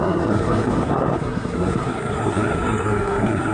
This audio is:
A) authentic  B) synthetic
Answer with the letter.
B